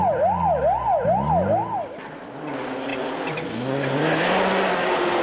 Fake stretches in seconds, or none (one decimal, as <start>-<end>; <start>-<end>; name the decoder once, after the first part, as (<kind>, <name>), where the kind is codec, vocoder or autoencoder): none